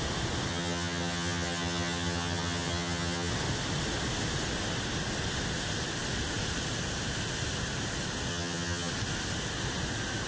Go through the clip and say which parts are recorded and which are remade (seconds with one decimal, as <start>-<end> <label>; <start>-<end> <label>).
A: 0.0-0.5 recorded; 0.5-3.3 remade; 3.3-8.3 recorded; 8.3-8.9 remade; 8.9-10.3 recorded